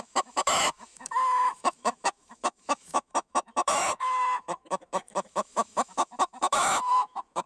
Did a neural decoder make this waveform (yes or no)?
yes